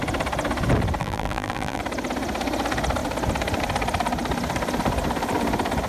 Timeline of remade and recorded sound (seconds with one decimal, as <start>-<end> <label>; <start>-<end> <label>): 0.0-1.0 recorded; 1.0-1.8 remade; 1.8-5.9 recorded